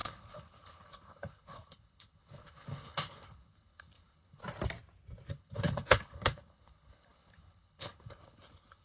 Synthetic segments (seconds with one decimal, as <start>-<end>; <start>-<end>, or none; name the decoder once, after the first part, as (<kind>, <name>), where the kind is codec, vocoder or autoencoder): 0.0-4.4 (codec, HILCodec); 5.3-8.8